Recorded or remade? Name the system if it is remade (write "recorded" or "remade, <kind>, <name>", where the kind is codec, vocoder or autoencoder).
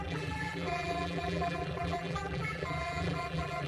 remade, vocoder, BigVGAN v2